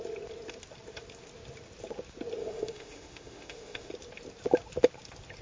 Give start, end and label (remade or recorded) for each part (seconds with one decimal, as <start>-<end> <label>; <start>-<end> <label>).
0.0-2.4 recorded; 2.4-3.9 remade; 3.9-5.4 recorded